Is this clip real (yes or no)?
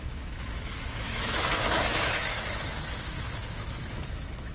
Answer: no